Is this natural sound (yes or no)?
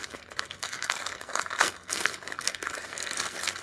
no